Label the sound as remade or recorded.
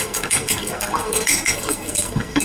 remade